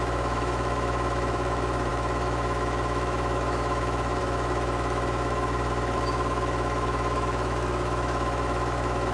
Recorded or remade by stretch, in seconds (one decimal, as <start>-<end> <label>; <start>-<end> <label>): 0.0-9.1 remade